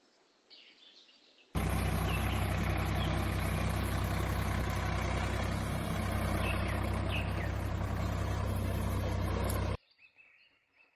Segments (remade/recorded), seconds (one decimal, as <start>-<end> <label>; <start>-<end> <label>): 0.0-11.0 recorded